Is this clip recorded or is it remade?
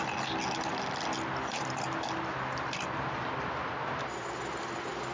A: recorded